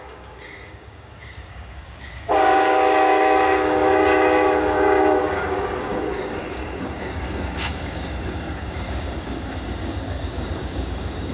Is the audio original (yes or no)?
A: no